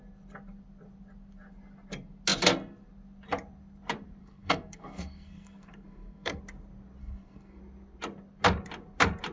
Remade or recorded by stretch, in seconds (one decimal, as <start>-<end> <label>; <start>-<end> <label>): 0.0-4.2 recorded; 4.2-6.4 remade; 6.4-7.0 recorded; 7.0-7.6 remade; 7.6-9.3 recorded